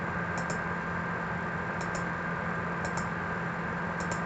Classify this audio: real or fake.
real